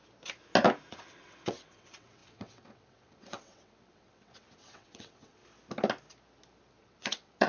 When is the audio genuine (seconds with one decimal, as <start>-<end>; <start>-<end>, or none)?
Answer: 0.0-0.9; 5.4-6.8